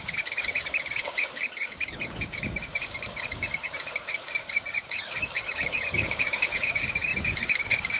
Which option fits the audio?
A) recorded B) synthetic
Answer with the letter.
B